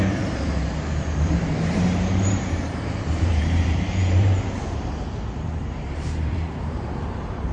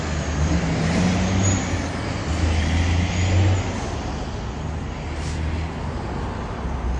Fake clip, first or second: first